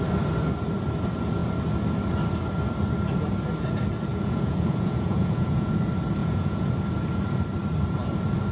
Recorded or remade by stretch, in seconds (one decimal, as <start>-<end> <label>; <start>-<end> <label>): 0.0-4.1 recorded; 4.1-5.7 remade; 5.7-6.2 recorded; 6.2-6.7 remade; 6.7-8.5 recorded